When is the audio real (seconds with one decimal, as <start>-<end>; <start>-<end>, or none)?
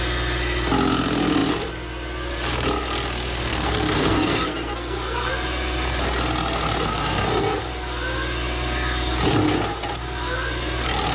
0.0-3.5; 5.3-6.9; 7.6-11.1